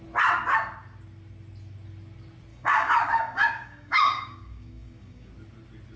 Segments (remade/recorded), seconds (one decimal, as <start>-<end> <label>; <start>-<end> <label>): 0.0-2.5 recorded; 2.5-5.3 remade; 5.3-6.0 recorded